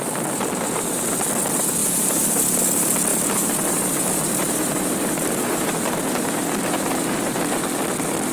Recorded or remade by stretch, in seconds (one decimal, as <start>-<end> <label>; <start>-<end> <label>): 0.0-1.8 recorded; 1.8-2.4 remade; 2.4-3.1 recorded; 3.1-7.4 remade; 7.4-8.3 recorded